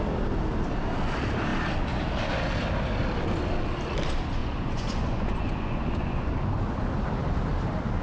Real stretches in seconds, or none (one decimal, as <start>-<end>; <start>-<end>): 0.0-4.4; 6.3-8.0